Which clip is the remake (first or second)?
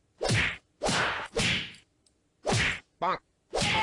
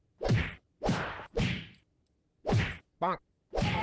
second